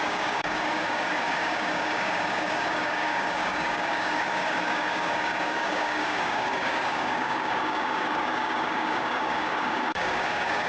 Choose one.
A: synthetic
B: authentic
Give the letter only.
A